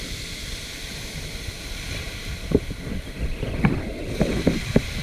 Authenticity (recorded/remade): remade